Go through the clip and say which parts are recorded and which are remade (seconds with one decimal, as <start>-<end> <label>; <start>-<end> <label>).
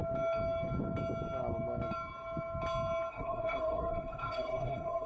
0.0-3.1 recorded; 3.1-5.1 remade